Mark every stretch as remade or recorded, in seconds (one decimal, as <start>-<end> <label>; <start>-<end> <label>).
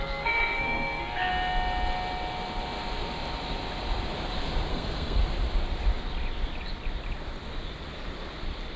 0.0-1.3 remade; 1.3-4.7 recorded; 4.7-5.2 remade; 5.2-8.8 recorded